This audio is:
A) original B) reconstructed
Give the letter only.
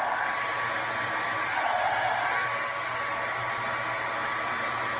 A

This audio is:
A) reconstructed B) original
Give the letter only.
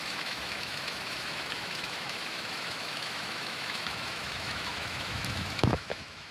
A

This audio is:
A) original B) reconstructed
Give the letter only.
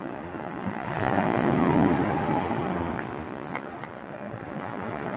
B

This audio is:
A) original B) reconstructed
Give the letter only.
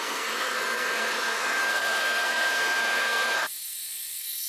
B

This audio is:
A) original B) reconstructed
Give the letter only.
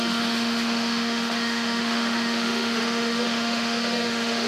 B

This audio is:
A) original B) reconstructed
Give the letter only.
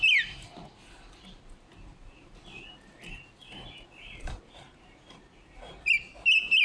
A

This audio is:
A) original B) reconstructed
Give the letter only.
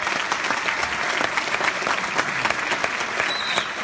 A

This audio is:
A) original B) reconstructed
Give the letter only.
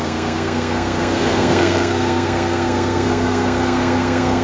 B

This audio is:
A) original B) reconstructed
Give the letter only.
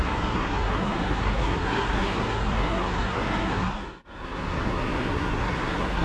B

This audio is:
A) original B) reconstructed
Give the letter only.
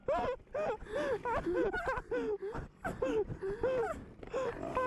A